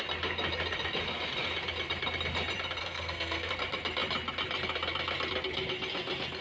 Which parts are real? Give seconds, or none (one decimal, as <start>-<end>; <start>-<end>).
0.0-2.8; 3.5-6.4